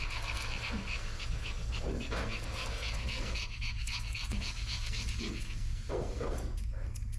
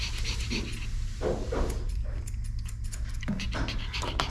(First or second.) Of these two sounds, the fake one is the first